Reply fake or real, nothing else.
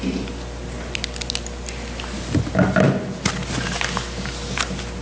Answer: real